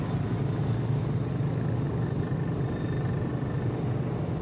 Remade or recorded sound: recorded